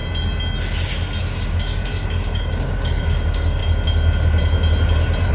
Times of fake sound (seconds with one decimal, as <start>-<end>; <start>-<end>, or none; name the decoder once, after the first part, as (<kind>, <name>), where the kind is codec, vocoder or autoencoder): 1.2-3.6 (codec, DAC)